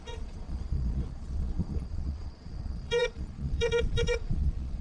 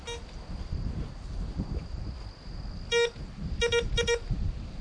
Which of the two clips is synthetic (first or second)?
first